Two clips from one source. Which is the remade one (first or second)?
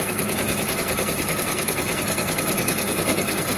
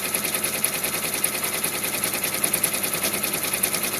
first